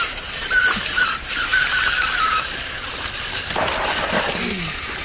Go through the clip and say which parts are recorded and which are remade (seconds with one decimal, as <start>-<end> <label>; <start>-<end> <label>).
0.0-5.0 recorded